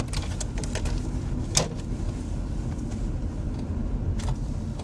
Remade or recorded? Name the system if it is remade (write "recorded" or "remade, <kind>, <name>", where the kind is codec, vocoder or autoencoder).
recorded